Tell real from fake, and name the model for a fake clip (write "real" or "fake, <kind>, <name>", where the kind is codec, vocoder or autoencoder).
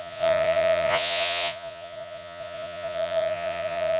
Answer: fake, vocoder, Vocos